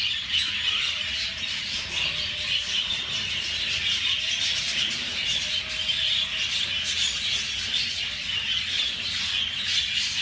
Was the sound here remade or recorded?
recorded